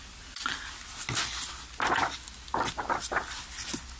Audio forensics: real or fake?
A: real